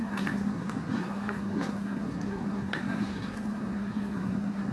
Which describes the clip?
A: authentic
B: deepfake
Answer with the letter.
B